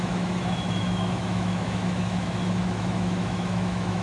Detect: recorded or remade remade